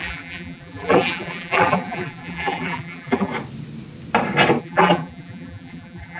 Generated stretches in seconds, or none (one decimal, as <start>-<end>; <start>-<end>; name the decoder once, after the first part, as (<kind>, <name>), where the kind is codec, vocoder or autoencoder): 0.0-3.3 (vocoder, BigVGAN v2); 4.6-6.2